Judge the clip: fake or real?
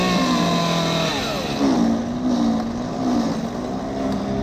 real